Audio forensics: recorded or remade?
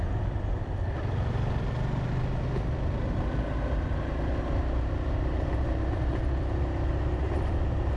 recorded